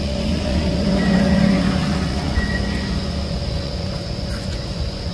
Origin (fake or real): fake